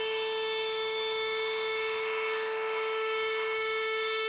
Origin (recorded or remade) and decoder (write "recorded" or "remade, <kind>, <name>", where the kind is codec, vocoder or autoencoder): remade, autoencoder, DAC-VAE